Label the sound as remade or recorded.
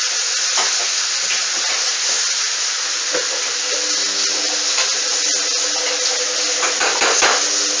recorded